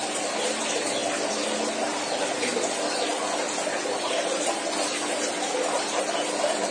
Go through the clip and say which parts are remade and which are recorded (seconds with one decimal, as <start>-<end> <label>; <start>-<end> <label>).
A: 0.0-6.7 recorded